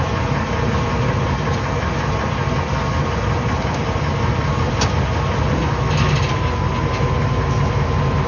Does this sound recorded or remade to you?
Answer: recorded